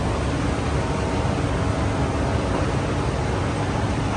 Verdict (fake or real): real